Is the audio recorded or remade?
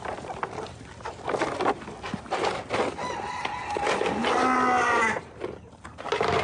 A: recorded